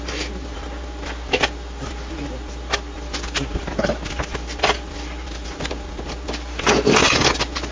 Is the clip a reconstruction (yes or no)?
no